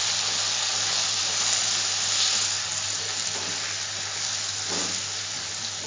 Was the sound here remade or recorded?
recorded